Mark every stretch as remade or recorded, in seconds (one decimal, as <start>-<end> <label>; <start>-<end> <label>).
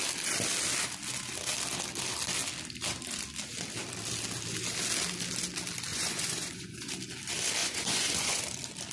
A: 0.0-5.9 recorded; 5.9-6.9 remade; 6.9-7.6 recorded; 7.6-8.4 remade; 8.4-8.9 recorded